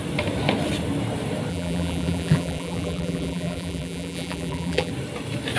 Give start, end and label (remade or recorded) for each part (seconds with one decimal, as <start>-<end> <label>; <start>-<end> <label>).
0.0-1.5 recorded; 1.5-4.9 remade; 4.9-5.6 recorded